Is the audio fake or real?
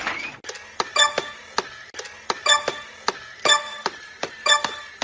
real